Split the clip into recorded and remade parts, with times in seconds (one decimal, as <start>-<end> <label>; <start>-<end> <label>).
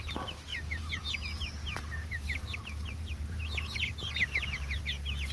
0.0-0.5 recorded; 0.5-1.1 remade; 1.1-1.6 recorded; 1.6-4.8 remade; 4.8-5.3 recorded